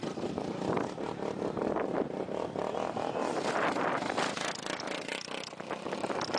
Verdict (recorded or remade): recorded